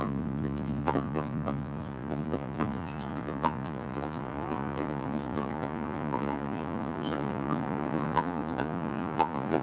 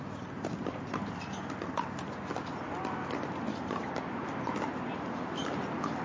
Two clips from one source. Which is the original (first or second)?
second